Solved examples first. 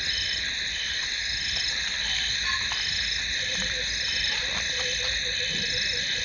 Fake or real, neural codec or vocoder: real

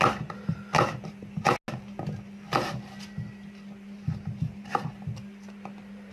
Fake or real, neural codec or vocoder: real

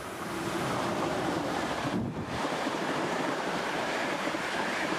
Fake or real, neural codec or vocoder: fake, vocoder, BigVGAN v2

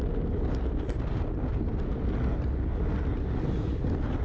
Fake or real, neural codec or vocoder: real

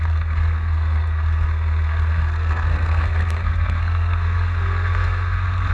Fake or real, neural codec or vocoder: fake, codec, SNAC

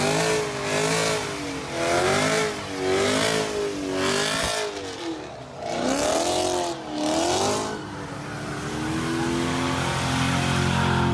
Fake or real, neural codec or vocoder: real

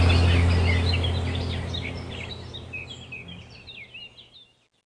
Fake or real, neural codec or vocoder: real